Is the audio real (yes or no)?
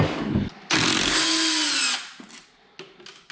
yes